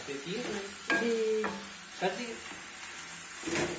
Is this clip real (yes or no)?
yes